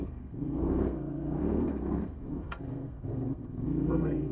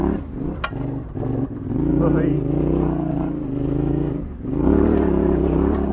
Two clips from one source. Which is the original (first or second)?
second